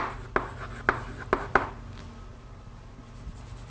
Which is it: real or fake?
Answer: real